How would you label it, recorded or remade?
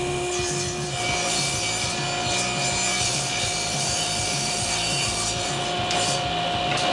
recorded